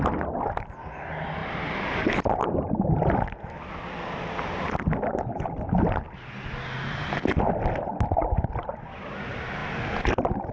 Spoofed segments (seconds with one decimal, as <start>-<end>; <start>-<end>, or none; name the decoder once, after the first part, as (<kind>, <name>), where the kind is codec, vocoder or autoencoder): none